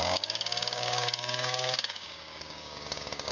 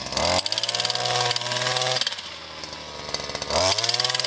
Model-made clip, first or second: first